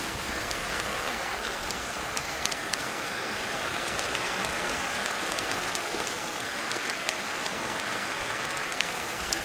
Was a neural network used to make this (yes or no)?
yes